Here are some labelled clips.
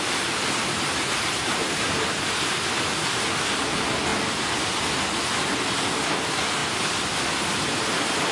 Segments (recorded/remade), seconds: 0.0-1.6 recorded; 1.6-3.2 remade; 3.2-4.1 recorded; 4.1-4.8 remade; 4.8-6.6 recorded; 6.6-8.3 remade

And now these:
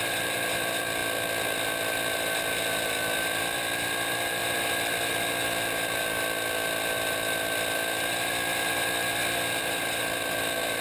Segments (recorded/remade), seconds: 0.0-1.0 remade; 1.0-3.4 recorded; 3.4-4.4 remade; 4.4-9.6 recorded; 9.6-10.8 remade

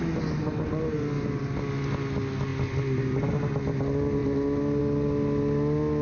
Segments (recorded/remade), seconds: 0.0-6.0 recorded